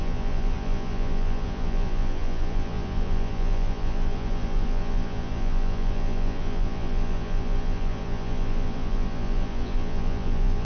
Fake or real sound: fake